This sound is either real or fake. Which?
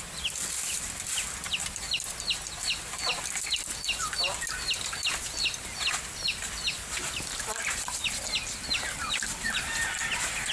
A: real